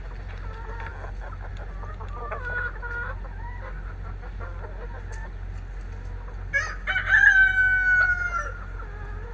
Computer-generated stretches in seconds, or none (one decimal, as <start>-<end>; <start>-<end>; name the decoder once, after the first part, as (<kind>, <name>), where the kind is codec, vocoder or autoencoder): none